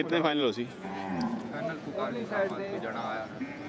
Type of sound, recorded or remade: remade